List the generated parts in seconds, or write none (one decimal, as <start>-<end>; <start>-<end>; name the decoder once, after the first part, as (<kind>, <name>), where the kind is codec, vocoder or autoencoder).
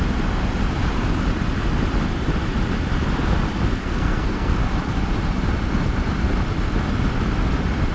3.8-4.6 (codec, SNAC)